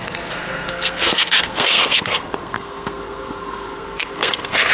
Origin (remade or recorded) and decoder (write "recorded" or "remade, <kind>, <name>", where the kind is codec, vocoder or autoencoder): remade, codec, SNAC